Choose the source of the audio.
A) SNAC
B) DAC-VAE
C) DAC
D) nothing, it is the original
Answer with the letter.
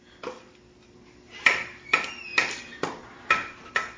D